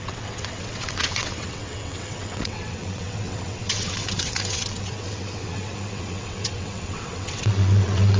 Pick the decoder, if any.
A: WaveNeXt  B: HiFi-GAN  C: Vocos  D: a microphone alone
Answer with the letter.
A